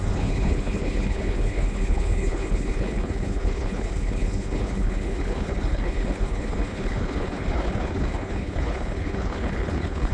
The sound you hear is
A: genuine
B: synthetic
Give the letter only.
B